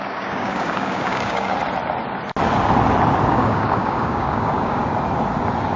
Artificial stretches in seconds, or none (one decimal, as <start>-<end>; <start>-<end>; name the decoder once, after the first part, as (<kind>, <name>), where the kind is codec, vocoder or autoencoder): 0.0-1.6 (codec, DAC); 3.3-4.8